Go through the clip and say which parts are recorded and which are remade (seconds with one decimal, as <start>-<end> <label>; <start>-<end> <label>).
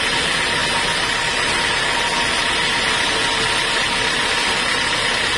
0.0-5.4 recorded